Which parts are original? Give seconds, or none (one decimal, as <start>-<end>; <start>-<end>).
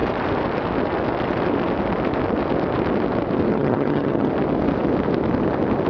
0.0-3.5; 4.3-5.9